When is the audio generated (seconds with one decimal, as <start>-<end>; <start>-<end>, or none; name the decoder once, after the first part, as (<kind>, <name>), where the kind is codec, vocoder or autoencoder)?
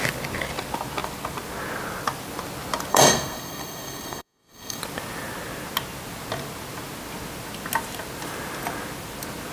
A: 2.9-4.8 (codec, SNAC)